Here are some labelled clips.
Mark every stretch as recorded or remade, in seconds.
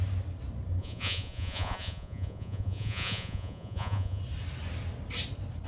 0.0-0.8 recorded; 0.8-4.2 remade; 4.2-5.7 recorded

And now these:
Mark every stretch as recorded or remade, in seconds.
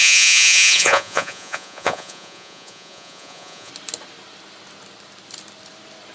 0.0-3.7 remade; 3.7-6.1 recorded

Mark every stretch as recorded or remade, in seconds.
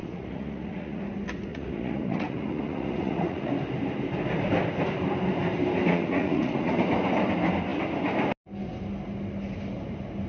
0.0-1.0 remade; 1.0-1.5 recorded; 1.5-3.5 remade; 3.5-5.9 recorded; 5.9-6.7 remade; 6.7-10.3 recorded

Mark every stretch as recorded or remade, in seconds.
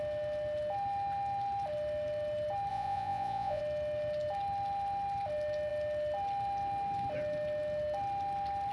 0.0-2.7 recorded; 2.7-3.6 remade; 3.6-8.7 recorded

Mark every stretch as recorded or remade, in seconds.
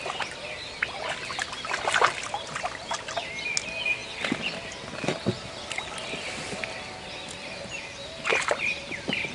0.0-9.3 recorded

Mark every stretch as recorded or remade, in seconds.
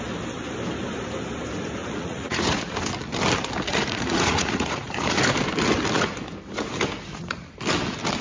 0.0-1.8 recorded; 1.8-2.6 remade; 2.6-3.7 recorded; 3.7-5.2 remade; 5.2-8.2 recorded